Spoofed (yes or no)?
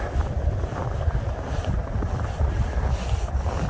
no